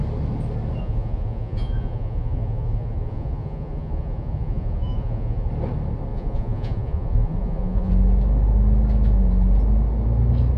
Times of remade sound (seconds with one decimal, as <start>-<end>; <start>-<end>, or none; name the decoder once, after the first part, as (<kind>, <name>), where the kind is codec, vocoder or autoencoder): 0.8-5.5 (vocoder, Vocos); 6.1-7.9